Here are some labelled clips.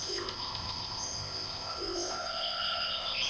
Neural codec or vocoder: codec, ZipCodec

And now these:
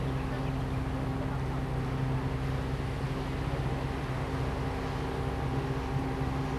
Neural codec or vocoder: none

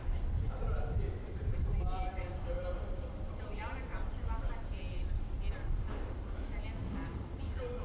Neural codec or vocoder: vocoder, BigVGAN v2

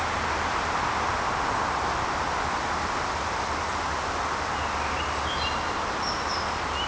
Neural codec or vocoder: none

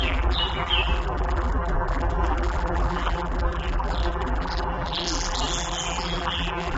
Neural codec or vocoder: vocoder, BigVGAN v2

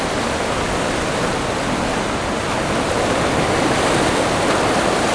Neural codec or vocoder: none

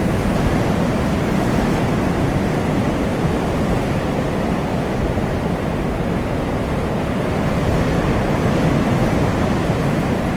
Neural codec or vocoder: none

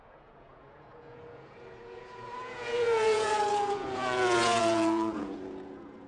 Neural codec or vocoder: vocoder, Vocos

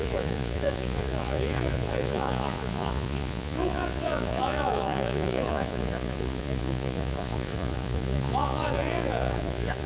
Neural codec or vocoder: vocoder, Vocos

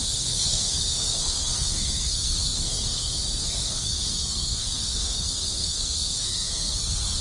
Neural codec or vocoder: codec, SNAC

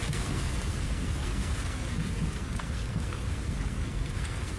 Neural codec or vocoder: codec, SNAC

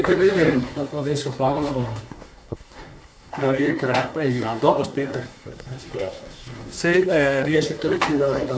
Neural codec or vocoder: codec, SNAC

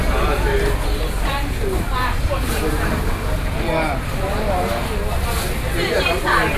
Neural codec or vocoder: none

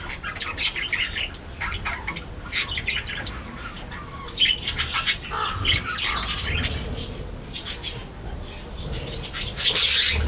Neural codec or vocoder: none